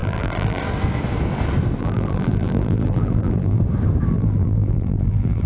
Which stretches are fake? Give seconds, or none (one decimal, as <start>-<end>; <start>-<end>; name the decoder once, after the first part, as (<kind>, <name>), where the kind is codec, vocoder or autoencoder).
0.0-0.6 (vocoder, BigVGAN v2); 1.8-3.6; 4.1-5.5